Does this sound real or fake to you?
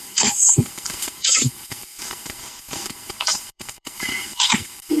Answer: fake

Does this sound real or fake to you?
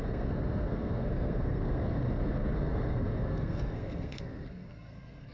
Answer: fake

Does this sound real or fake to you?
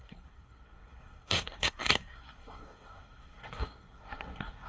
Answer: fake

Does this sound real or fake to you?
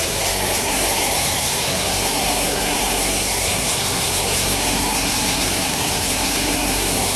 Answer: fake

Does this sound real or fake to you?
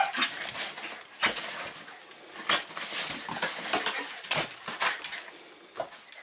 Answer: real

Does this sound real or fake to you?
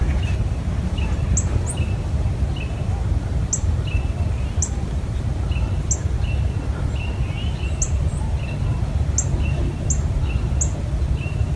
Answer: real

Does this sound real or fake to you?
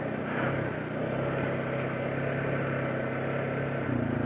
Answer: real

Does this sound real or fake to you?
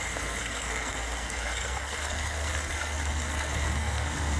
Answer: fake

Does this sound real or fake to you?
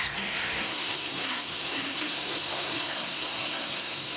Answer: fake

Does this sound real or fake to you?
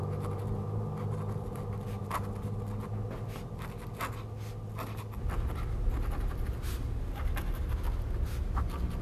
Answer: real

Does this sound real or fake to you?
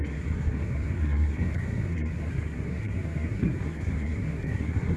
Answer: fake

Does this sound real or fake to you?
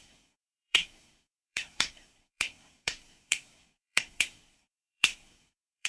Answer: fake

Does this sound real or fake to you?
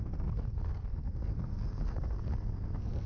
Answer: fake